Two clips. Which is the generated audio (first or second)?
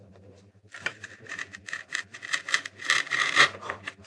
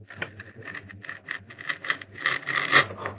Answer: first